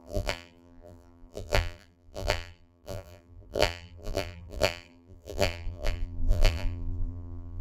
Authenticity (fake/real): fake